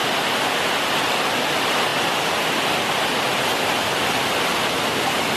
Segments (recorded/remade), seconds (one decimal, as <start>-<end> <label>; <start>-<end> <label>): 0.0-5.4 recorded